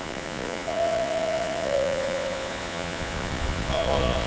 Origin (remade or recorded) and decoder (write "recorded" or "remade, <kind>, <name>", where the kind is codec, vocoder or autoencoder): remade, vocoder, Vocos